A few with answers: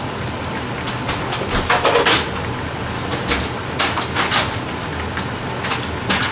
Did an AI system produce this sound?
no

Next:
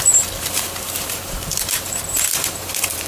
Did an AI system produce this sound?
yes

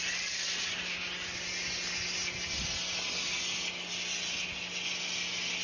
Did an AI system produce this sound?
no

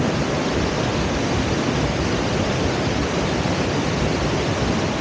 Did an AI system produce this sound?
no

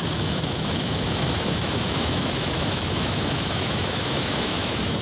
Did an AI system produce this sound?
yes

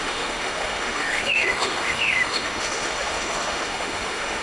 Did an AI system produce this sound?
yes